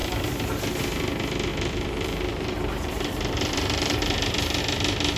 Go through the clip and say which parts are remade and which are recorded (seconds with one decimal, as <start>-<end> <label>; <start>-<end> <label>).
0.0-1.5 recorded; 1.5-4.6 remade; 4.6-5.2 recorded